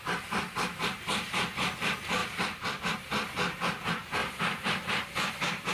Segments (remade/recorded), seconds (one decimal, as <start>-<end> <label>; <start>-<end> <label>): 0.0-2.2 recorded; 2.2-2.8 remade; 2.8-4.2 recorded; 4.2-5.7 remade